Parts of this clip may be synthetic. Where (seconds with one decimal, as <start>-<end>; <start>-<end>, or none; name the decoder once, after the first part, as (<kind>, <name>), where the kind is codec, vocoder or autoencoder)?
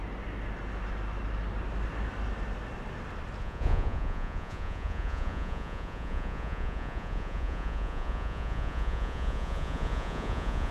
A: 3.4-10.7 (vocoder, Vocos)